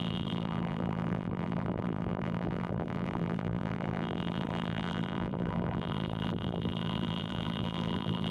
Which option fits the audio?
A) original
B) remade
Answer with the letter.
B